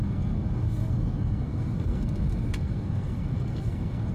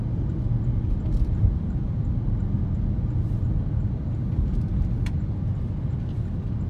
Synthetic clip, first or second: first